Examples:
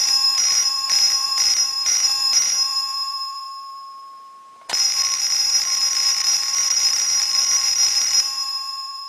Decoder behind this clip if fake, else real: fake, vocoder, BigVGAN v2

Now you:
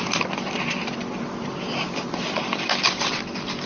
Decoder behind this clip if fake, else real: fake, vocoder, BigVGAN v2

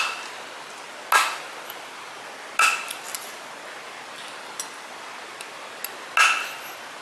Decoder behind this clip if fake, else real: real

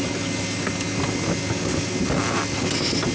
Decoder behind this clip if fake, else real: real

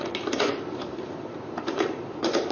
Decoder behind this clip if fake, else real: fake, vocoder, BigVGAN v2